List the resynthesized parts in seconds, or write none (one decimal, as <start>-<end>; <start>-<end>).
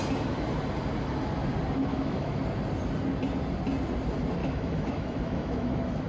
1.9-2.4; 4.4-6.1